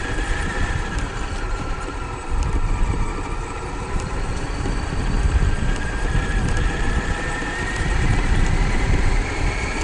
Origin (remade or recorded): remade